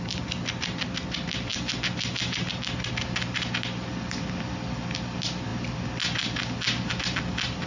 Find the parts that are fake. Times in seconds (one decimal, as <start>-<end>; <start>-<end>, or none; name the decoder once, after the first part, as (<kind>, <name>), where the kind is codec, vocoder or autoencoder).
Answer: none